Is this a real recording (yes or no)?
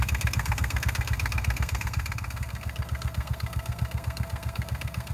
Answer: no